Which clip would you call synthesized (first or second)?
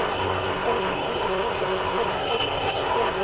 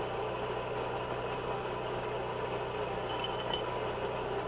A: first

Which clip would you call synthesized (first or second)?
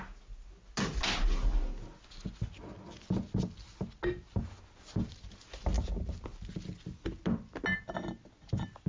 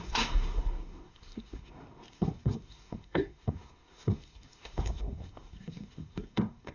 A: second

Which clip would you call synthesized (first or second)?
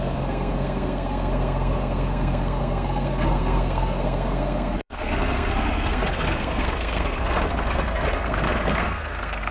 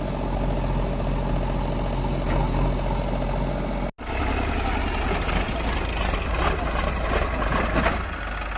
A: first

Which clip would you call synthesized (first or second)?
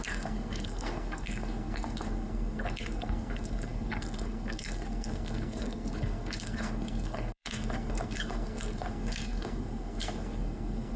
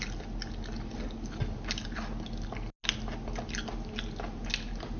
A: first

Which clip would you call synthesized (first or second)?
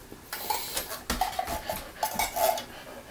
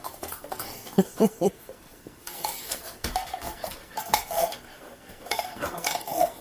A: second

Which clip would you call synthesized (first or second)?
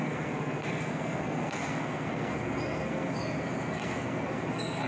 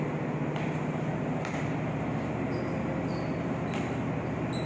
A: first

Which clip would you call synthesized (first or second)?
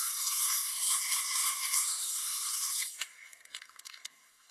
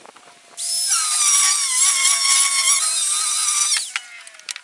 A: first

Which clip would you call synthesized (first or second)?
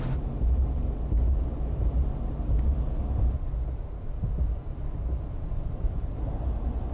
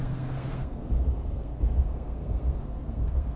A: second